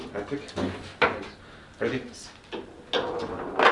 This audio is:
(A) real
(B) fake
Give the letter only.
A